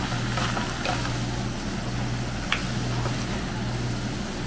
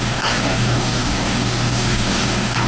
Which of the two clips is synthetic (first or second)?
second